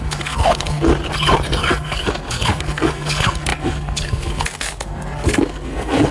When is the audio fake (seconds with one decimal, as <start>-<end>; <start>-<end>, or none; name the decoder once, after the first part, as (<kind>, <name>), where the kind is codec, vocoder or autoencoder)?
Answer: 0.0-0.9 (codec, SNAC); 1.7-6.1